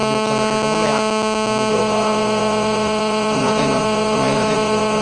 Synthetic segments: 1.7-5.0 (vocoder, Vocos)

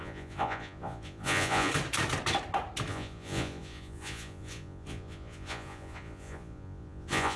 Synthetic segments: 0.0-1.7 (vocoder, Vocos); 2.9-7.4

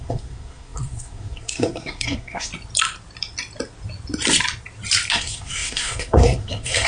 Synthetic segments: 0.0-2.5 (codec, SNAC); 5.1-6.9

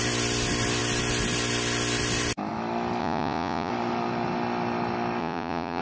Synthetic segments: 3.0-3.7 (vocoder, Vocos); 5.2-5.8

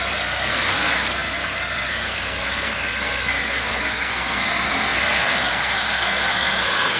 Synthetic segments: 0.0-7.0 (codec, SNAC)

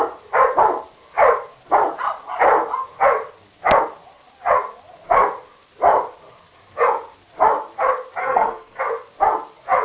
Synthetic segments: 8.2-8.8 (codec, SNAC)